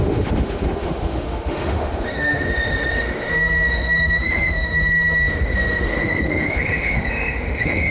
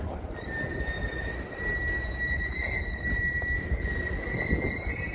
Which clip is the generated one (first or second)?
first